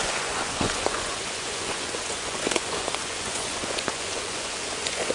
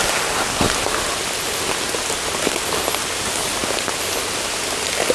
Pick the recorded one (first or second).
second